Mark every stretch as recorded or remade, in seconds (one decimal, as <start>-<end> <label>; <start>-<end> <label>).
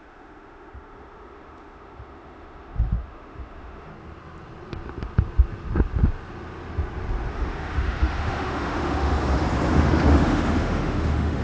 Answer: 0.0-3.9 remade; 3.9-7.3 recorded; 7.3-9.1 remade; 9.1-9.7 recorded; 9.7-11.4 remade